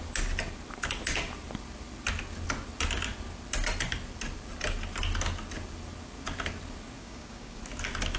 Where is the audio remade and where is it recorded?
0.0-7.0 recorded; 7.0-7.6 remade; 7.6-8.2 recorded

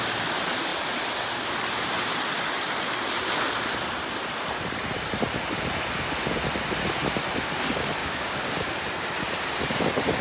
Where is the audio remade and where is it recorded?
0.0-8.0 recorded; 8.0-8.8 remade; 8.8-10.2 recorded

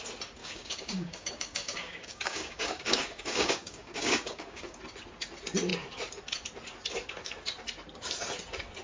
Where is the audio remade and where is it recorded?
0.0-0.4 recorded; 0.4-4.8 remade; 4.8-8.8 recorded